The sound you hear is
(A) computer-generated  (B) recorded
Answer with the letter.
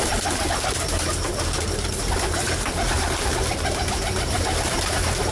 A